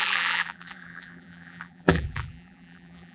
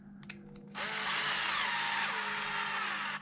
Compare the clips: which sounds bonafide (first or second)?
second